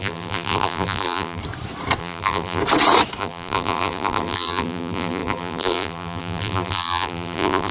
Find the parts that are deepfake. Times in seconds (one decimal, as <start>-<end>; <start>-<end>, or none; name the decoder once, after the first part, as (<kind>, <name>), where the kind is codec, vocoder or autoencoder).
0.0-1.4 (vocoder, BigVGAN v2); 2.0-2.6; 3.2-7.7